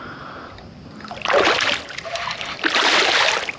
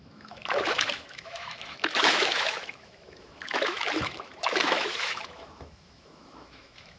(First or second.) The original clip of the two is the first